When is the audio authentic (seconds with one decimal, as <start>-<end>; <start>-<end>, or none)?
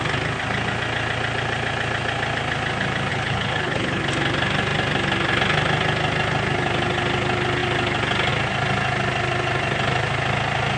0.0-3.1; 4.0-10.8